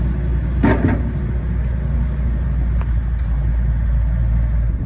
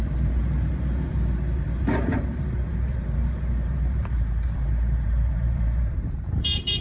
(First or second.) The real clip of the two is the first